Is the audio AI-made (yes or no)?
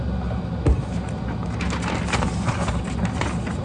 no